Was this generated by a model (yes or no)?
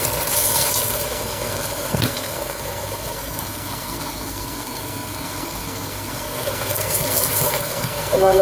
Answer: yes